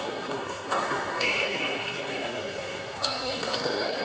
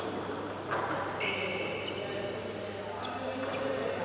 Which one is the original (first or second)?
second